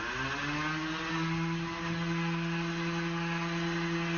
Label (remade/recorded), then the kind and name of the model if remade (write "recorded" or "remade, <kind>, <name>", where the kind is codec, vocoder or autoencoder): recorded